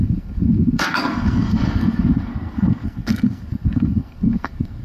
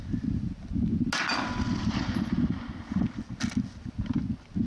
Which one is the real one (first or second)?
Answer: second